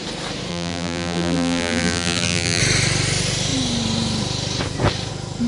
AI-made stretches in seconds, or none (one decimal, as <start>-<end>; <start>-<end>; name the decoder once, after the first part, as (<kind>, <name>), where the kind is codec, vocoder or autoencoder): 0.5-2.6 (vocoder, BigVGAN v2)